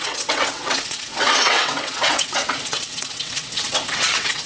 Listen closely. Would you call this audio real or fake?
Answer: fake